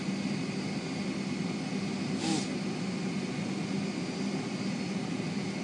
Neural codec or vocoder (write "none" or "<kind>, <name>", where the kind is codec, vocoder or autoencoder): none